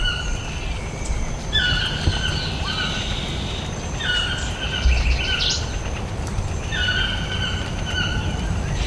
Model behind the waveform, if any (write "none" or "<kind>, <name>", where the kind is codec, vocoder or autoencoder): none